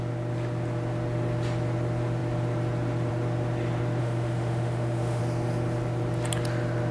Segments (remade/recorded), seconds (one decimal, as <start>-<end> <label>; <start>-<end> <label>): 0.0-4.0 recorded; 4.0-5.2 remade; 5.2-6.9 recorded

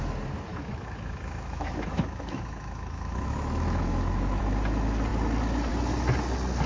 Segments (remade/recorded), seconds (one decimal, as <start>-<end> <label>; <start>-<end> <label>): 0.0-0.5 recorded; 0.5-4.4 remade; 4.4-6.7 recorded

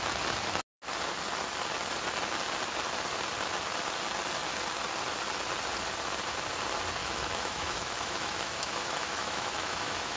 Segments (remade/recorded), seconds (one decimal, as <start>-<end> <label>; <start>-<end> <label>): 0.0-7.0 recorded; 7.0-10.2 remade

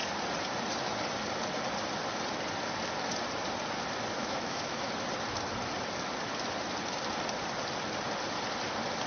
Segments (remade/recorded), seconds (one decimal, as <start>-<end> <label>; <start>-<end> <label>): 0.0-4.2 recorded; 4.2-4.9 remade; 4.9-9.1 recorded